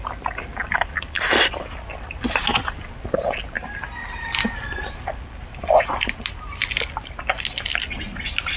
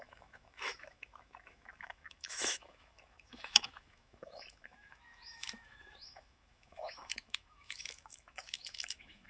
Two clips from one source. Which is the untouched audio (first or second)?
first